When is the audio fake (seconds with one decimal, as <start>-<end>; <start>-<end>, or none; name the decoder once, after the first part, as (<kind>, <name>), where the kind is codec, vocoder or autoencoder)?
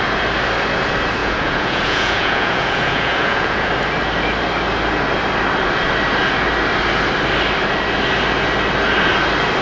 1.2-3.7 (vocoder, Vocos)